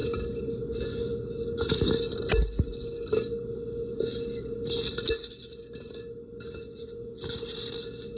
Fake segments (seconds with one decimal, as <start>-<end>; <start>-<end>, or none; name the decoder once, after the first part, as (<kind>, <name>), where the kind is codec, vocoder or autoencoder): none

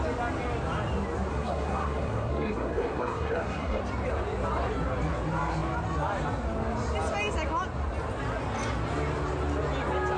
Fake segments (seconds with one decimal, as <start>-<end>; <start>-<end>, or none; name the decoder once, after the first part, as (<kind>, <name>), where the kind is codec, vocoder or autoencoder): 1.3-3.8 (codec, SNAC)

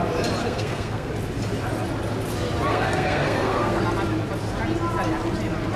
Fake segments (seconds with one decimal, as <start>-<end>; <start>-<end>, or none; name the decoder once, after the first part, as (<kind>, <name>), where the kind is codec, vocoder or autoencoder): 0.4-1.1 (codec, SNAC); 2.7-3.8

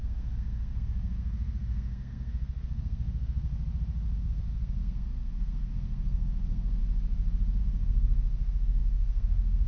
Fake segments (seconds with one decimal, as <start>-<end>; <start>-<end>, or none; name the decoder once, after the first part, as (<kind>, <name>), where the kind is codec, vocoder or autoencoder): 0.0-3.5 (codec, SNAC); 4.2-6.8; 7.6-9.7